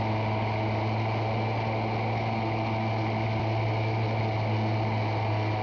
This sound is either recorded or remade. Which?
recorded